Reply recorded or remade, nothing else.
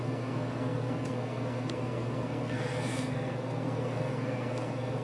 remade